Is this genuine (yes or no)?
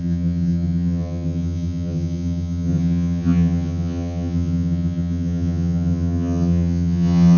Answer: no